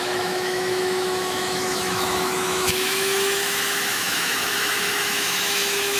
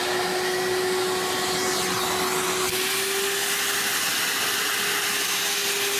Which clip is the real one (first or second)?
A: second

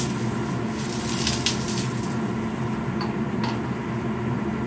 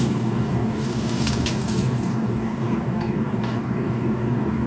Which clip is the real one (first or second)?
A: first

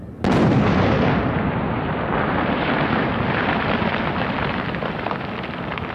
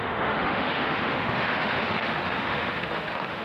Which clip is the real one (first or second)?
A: first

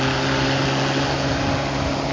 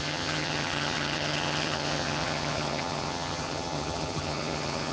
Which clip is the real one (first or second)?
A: first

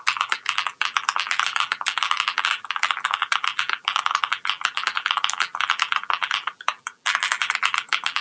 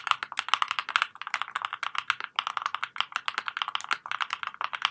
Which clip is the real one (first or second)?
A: second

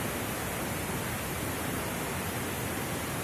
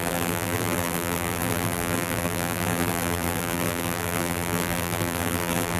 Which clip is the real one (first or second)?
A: first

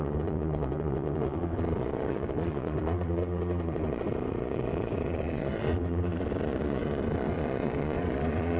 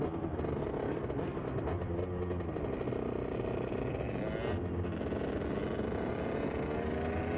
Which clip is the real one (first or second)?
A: second